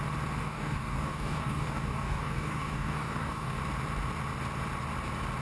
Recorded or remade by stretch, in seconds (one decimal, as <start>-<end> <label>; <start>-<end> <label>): 0.0-0.4 recorded; 0.4-3.6 remade; 3.6-5.4 recorded